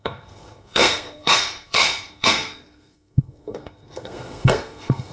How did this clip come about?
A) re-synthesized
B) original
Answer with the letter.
A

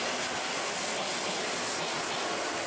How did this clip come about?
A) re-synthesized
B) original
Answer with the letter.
B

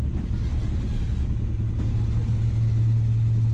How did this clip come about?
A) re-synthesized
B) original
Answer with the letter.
B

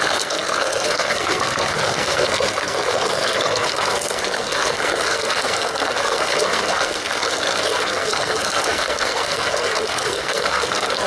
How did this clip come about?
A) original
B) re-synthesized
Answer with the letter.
B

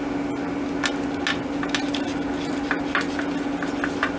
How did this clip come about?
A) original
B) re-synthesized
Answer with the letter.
A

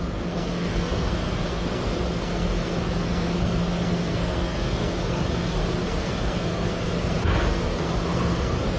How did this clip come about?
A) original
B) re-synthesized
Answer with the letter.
B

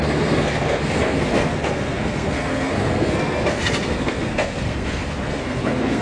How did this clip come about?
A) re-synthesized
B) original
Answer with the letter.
A